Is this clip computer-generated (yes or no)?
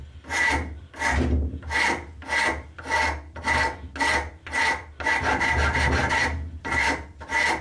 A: no